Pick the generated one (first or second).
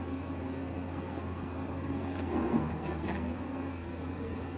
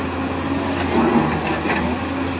first